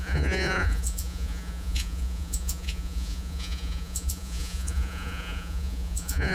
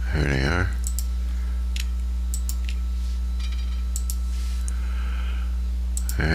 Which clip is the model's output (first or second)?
first